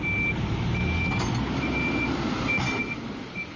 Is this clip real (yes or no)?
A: yes